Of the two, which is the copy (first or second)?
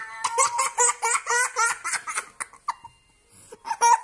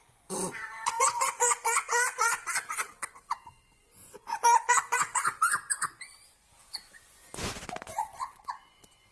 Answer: second